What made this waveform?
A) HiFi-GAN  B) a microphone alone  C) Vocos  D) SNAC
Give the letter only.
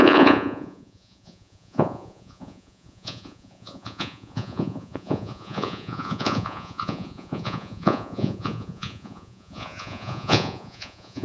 C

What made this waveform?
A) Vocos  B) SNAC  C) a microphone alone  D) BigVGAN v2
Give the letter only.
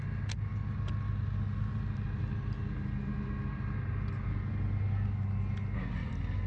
C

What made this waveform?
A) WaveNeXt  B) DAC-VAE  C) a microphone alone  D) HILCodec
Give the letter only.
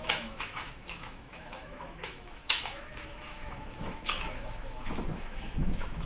B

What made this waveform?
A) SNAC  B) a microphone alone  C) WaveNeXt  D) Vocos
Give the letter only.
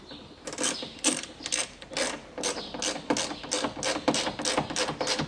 B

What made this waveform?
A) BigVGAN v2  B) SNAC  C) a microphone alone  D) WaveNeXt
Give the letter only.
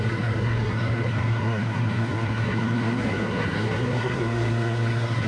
B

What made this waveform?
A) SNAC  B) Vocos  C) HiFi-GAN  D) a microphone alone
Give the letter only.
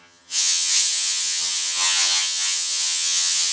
C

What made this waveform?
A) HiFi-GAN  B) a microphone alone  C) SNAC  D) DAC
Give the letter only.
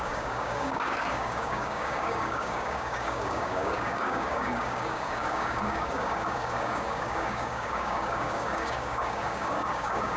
D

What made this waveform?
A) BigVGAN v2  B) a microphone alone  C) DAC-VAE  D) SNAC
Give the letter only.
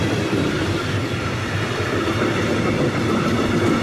B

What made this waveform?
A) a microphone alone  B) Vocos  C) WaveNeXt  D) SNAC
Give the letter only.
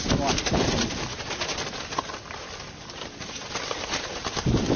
A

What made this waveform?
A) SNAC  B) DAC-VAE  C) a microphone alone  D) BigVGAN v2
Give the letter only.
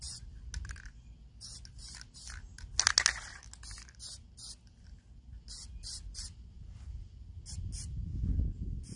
C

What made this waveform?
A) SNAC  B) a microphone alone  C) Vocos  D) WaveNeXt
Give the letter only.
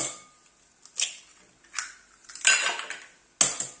B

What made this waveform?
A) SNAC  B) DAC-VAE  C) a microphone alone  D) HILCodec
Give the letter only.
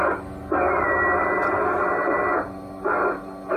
C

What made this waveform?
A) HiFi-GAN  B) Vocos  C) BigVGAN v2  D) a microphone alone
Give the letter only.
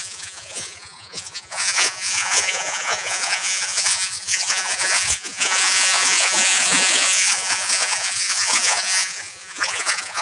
B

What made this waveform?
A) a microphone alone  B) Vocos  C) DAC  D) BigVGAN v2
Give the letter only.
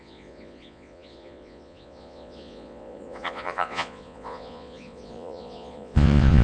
B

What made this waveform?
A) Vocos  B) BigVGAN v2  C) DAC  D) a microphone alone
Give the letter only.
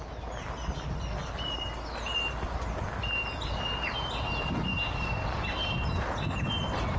D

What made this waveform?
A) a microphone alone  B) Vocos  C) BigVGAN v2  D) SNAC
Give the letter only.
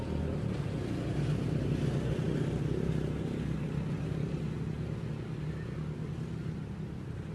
A